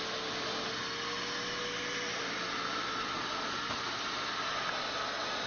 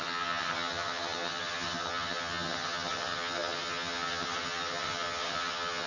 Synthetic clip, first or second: second